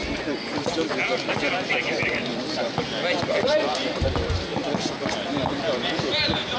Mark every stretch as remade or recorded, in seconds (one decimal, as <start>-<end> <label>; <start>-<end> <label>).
0.0-1.7 recorded; 1.7-2.3 remade; 2.3-3.5 recorded; 3.5-4.5 remade; 4.5-6.1 recorded; 6.1-6.6 remade